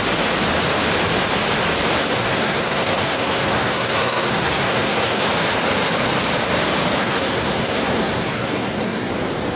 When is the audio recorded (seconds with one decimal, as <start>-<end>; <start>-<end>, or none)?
0.0-2.0; 5.2-7.0; 9.1-9.6